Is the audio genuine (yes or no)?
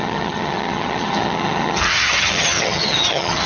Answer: no